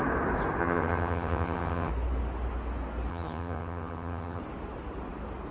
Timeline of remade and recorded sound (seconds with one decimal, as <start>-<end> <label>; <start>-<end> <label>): 0.0-0.6 recorded; 0.6-1.9 remade; 1.9-3.1 recorded; 3.1-4.4 remade; 4.4-5.5 recorded